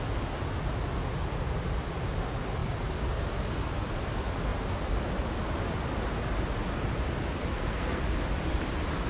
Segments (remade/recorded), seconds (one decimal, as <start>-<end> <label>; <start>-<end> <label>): 0.0-7.5 recorded; 7.5-8.0 remade; 8.0-9.1 recorded

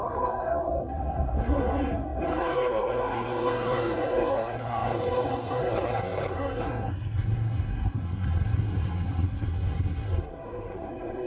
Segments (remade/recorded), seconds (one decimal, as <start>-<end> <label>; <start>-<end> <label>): 0.0-11.3 remade

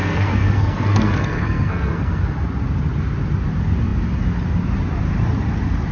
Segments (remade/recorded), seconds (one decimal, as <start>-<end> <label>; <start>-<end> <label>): 0.0-2.2 remade; 2.2-5.9 recorded

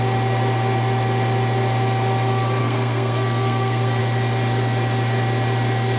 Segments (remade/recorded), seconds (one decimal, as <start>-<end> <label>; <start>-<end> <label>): 0.0-2.6 recorded; 2.6-4.0 remade; 4.0-6.0 recorded

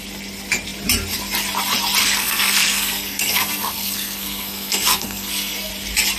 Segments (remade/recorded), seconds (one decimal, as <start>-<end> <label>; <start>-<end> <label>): 0.0-2.0 recorded; 2.0-5.7 remade; 5.7-6.2 recorded

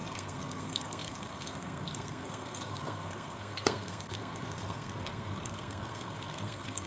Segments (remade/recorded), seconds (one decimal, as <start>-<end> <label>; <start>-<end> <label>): 0.0-6.9 remade